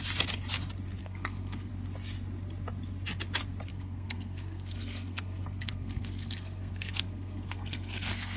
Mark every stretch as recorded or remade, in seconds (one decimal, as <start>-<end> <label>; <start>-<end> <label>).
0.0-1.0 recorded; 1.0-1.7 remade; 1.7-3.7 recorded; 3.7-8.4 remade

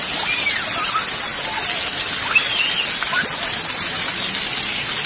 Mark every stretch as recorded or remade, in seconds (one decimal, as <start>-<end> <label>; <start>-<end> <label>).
0.0-5.1 recorded

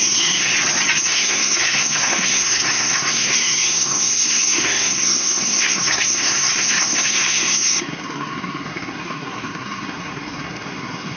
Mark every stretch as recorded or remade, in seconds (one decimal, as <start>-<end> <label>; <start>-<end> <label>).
0.0-0.5 remade; 0.5-1.0 recorded; 1.0-11.2 remade

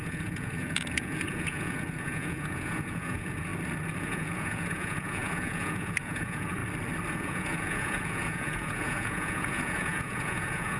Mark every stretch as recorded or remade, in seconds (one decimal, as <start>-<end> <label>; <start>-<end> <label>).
0.0-3.5 remade; 3.5-4.0 recorded; 4.0-6.6 remade; 6.6-7.1 recorded; 7.1-10.8 remade

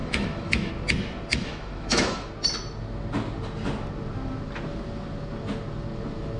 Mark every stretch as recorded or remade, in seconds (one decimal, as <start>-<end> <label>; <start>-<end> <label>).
0.0-0.7 remade; 0.7-1.3 recorded; 1.3-2.3 remade; 2.3-6.4 recorded

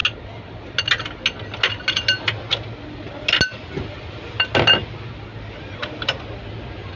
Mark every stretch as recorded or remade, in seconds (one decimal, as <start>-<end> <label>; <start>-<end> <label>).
0.0-7.0 recorded